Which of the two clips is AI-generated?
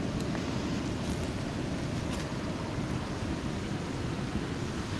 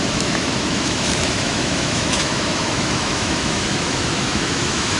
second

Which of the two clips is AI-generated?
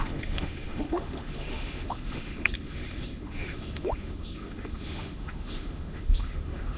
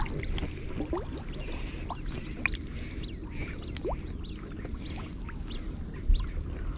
first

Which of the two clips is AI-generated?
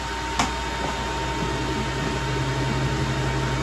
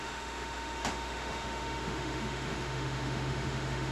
second